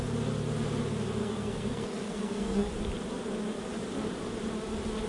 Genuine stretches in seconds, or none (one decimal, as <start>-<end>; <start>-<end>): 0.0-1.2; 2.7-5.1